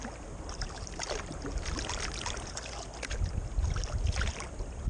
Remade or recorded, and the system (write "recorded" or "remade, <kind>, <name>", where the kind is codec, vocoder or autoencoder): recorded